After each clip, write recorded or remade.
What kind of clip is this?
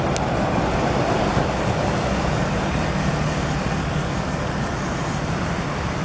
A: recorded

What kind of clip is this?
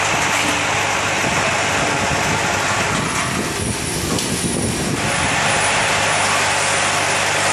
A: recorded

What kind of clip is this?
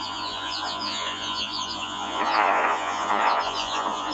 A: remade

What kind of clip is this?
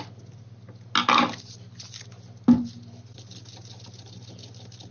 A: recorded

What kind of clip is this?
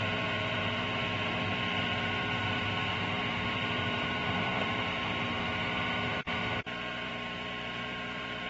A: remade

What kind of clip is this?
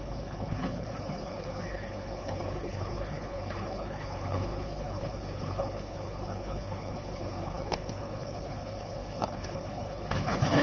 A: remade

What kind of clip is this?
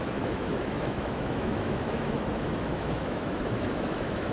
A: remade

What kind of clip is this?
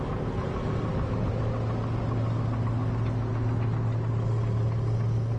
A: recorded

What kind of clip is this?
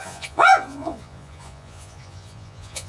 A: remade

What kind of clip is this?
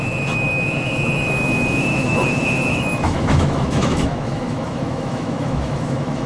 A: remade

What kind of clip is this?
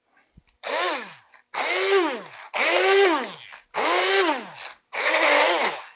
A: recorded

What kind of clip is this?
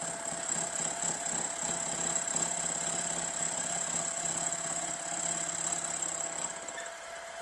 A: recorded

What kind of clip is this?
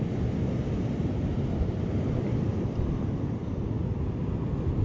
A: recorded